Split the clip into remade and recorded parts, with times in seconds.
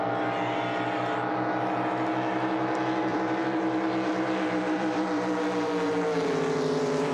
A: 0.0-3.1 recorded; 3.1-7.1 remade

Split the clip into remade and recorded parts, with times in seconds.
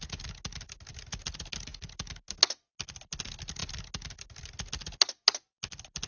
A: 0.0-6.1 recorded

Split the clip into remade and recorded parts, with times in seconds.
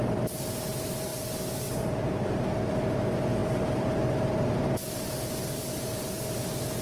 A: 0.0-6.8 remade